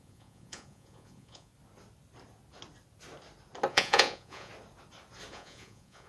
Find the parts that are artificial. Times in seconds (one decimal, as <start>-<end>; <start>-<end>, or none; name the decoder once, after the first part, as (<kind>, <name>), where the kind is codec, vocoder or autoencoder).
0.0-1.5 (vocoder, Vocos); 3.7-4.5; 5.3-6.1

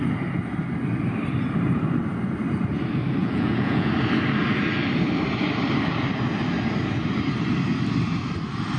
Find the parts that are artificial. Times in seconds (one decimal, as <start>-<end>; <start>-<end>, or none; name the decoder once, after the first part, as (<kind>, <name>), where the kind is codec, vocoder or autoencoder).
3.2-3.9 (vocoder, Vocos)

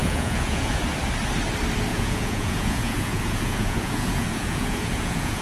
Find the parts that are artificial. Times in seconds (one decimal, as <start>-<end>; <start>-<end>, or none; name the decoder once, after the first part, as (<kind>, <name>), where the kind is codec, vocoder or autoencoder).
0.0-0.8 (vocoder, Vocos); 1.9-5.4

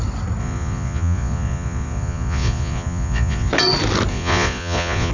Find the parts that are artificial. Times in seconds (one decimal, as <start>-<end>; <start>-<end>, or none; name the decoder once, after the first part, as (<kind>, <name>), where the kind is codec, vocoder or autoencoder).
0.4-3.5 (vocoder, Vocos); 4.1-5.1

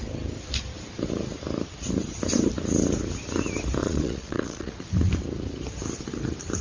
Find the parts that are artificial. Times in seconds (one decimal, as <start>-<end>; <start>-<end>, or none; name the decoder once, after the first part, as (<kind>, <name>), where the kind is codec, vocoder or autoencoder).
3.8-4.7 (vocoder, Vocos)

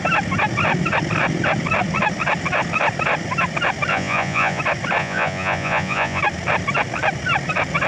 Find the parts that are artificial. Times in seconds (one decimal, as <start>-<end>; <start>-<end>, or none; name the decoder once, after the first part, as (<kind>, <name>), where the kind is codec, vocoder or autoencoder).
3.9-4.6 (vocoder, Vocos); 5.0-6.2

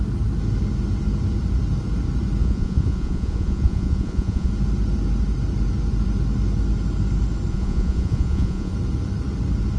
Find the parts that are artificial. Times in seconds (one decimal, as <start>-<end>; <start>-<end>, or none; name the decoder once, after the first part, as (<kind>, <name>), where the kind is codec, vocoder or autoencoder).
2.4-4.5 (vocoder, Vocos); 7.5-8.7